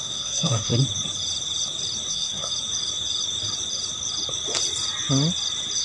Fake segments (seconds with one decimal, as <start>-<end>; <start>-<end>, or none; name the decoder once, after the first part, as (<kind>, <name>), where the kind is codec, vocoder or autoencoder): 0.0-0.7 (codec, SNAC); 2.1-2.5